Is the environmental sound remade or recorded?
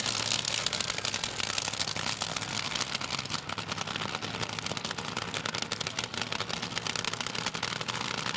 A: recorded